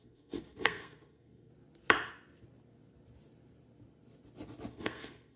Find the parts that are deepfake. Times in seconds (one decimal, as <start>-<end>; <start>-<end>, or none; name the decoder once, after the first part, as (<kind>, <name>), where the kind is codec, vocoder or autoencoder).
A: 0.0-1.5 (codec, SNAC); 4.7-5.4